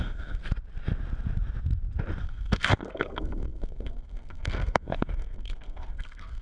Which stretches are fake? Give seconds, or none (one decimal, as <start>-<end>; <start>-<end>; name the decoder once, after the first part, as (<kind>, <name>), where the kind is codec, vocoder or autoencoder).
0.0-0.4 (codec, SNAC); 2.2-6.4